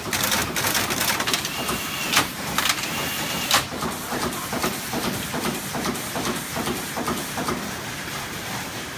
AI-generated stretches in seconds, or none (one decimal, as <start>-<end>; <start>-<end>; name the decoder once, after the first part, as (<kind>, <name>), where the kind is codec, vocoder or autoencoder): 0.0-9.0 (vocoder, BigVGAN v2)